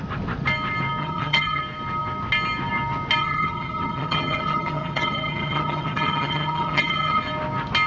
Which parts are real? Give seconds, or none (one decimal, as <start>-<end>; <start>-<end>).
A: 0.0-1.0; 1.6-3.2; 7.2-7.9